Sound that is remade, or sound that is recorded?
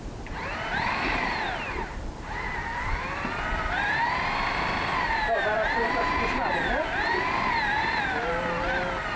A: remade